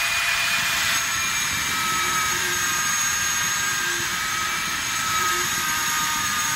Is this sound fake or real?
fake